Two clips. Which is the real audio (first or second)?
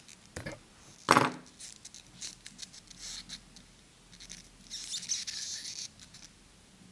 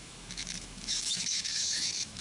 first